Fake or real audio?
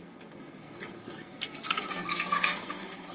fake